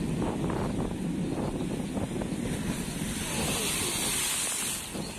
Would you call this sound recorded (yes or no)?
yes